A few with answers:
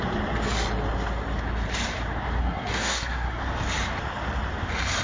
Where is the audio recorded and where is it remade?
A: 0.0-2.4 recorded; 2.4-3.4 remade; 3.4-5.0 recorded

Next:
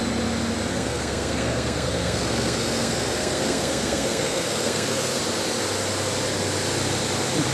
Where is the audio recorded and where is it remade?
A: 0.0-0.7 recorded; 0.7-5.2 remade; 5.2-7.5 recorded

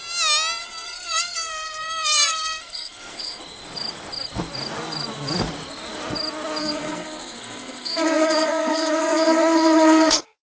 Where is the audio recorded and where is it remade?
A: 0.0-0.6 recorded; 0.6-3.4 remade; 3.4-6.6 recorded; 6.6-10.4 remade

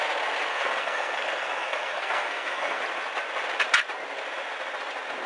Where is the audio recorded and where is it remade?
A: 0.0-0.5 recorded; 0.5-2.8 remade; 2.8-5.3 recorded

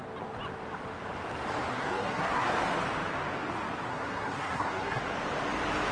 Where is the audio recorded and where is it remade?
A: 0.0-1.7 recorded; 1.7-2.5 remade; 2.5-3.9 recorded; 3.9-5.0 remade; 5.0-5.9 recorded

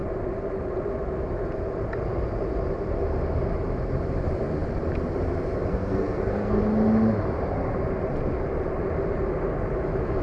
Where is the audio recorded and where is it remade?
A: 0.0-5.7 recorded; 5.7-6.6 remade; 6.6-10.2 recorded

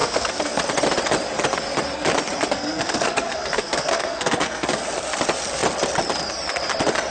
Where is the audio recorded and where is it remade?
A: 0.0-0.6 remade; 0.6-2.5 recorded; 2.5-4.8 remade; 4.8-7.1 recorded

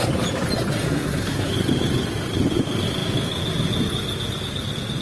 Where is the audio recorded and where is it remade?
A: 0.0-0.8 recorded; 0.8-1.5 remade; 1.5-5.0 recorded